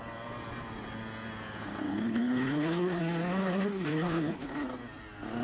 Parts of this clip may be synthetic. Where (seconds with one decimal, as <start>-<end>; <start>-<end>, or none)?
1.9-3.0; 3.4-4.5